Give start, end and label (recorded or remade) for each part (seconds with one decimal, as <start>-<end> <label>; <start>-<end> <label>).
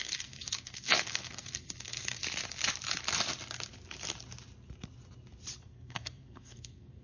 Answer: 0.0-2.2 remade; 2.2-5.6 recorded; 5.6-7.0 remade